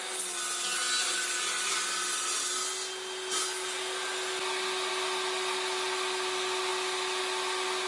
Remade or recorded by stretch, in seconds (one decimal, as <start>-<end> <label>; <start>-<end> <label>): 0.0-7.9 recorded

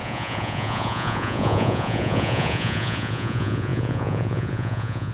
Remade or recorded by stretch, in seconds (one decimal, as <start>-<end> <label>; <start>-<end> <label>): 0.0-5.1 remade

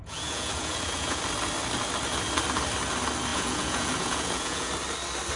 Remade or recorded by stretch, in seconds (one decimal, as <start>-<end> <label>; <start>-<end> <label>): 0.0-1.2 remade; 1.2-3.3 recorded; 3.3-4.7 remade; 4.7-5.4 recorded

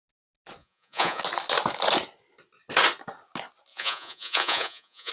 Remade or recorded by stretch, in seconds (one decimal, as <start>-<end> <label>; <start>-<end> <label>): 0.0-0.6 recorded; 0.6-1.2 remade; 1.2-3.7 recorded; 3.7-5.1 remade

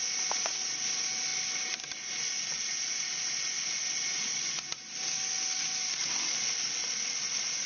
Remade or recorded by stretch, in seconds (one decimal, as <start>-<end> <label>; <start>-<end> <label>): 0.0-7.7 recorded